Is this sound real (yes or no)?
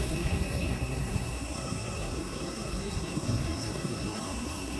no